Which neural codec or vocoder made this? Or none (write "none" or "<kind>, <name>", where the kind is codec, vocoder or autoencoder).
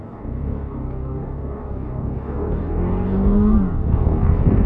codec, DAC